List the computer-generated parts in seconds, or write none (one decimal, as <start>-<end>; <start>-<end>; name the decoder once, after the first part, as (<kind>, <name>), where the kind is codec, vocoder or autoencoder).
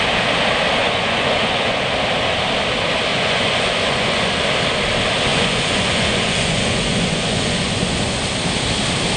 0.8-1.8 (vocoder, Vocos); 3.1-4.3; 5.3-8.2